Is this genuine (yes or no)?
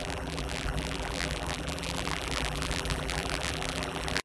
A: no